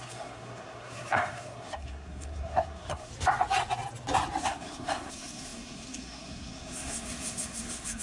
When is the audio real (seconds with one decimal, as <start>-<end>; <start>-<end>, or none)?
3.1-4.4